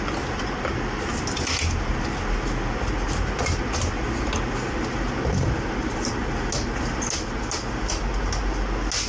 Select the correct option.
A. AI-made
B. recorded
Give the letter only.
B